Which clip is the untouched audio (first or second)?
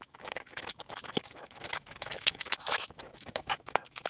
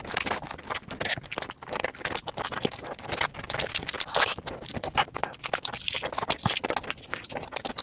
second